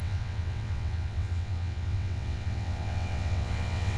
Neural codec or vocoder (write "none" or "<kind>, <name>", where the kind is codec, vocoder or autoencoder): vocoder, WaveNeXt